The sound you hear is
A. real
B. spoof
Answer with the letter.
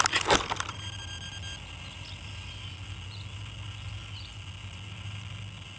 A